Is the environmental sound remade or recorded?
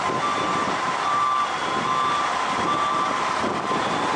recorded